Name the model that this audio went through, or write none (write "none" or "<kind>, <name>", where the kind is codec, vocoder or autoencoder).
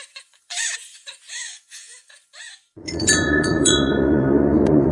vocoder, Vocos